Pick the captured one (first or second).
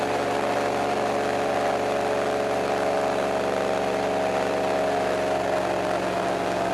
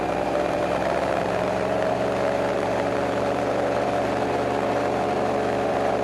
first